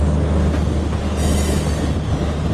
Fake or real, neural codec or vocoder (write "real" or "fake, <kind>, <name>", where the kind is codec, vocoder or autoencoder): real